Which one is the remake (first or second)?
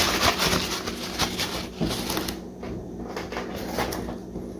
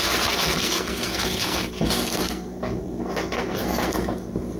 second